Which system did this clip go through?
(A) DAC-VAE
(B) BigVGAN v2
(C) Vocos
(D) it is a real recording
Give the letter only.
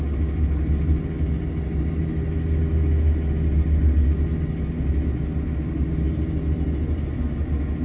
D